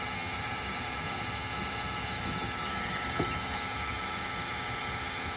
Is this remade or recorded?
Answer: remade